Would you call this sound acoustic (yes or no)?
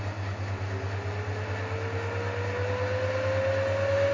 yes